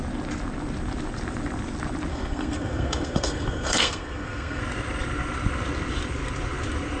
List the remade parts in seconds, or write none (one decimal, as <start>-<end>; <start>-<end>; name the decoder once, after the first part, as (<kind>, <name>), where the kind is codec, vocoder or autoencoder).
2.1-4.6 (codec, SNAC)